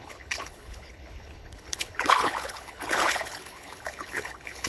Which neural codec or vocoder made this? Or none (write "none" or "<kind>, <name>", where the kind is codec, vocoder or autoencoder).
codec, HILCodec